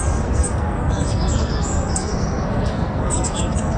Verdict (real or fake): fake